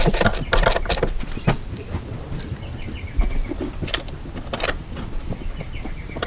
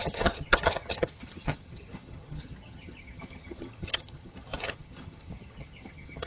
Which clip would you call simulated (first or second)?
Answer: second